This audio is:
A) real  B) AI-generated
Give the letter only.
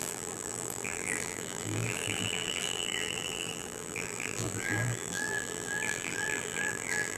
B